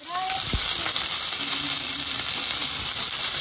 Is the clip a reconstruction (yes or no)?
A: no